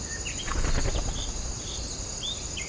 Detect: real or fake real